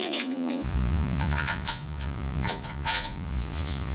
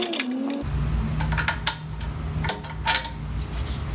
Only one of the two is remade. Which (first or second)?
first